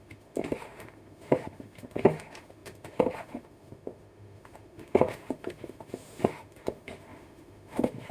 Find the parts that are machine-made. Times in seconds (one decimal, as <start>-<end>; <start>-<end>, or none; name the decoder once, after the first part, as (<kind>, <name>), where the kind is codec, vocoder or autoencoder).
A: 0.0-8.1 (autoencoder, DAC-VAE)